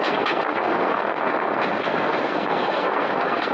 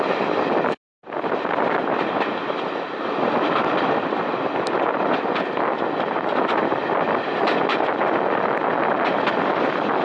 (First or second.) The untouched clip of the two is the second